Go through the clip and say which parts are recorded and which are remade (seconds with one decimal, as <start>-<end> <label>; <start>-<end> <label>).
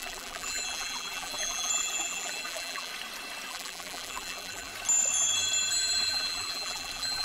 0.0-2.9 remade; 2.9-3.5 recorded; 3.5-4.7 remade; 4.7-5.7 recorded; 5.7-7.2 remade